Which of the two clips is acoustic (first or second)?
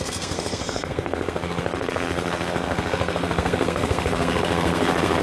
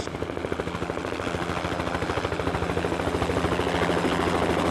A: second